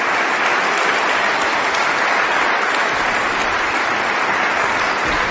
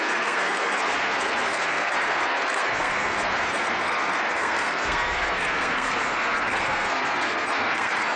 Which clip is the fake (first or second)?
second